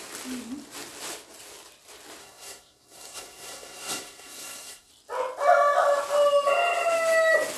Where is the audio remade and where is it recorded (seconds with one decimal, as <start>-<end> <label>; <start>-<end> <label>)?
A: 0.0-2.2 recorded; 2.2-4.9 remade; 4.9-7.6 recorded